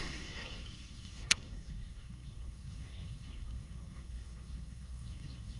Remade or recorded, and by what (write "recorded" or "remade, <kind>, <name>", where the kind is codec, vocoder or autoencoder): remade, codec, SNAC